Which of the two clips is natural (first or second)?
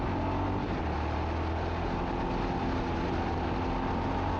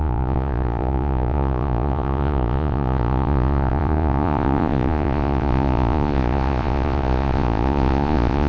first